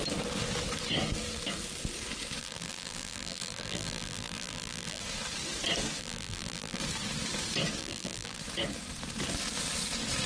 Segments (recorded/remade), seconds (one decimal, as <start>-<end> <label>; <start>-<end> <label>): 0.0-2.4 recorded; 2.4-5.0 remade; 5.0-6.0 recorded; 6.0-6.8 remade; 6.8-7.8 recorded; 7.8-8.4 remade; 8.4-10.3 recorded